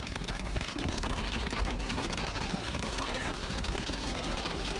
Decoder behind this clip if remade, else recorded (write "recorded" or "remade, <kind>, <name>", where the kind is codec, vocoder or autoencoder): remade, codec, SNAC